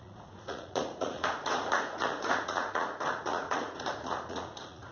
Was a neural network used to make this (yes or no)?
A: yes